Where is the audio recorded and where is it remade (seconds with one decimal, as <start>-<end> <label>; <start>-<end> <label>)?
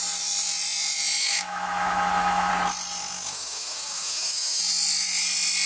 0.0-1.2 recorded; 1.2-2.5 remade; 2.5-3.0 recorded; 3.0-4.6 remade; 4.6-5.7 recorded